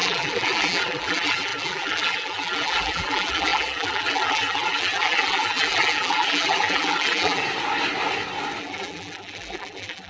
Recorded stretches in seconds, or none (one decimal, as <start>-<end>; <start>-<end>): 7.4-8.6